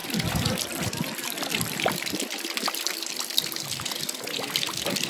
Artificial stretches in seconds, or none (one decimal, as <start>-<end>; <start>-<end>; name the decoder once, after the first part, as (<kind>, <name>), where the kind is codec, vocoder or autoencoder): 0.0-2.1 (vocoder, BigVGAN v2)